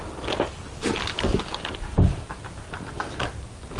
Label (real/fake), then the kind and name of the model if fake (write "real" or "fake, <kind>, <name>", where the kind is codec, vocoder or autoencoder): fake, vocoder, BigVGAN v2